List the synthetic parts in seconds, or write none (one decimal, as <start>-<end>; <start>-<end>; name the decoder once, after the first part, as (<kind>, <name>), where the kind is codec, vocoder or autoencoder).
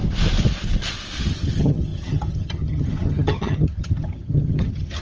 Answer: 1.2-5.0 (vocoder, HiFi-GAN)